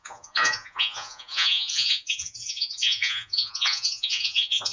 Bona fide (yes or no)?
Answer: no